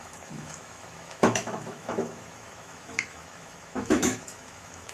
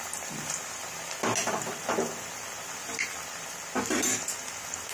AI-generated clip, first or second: first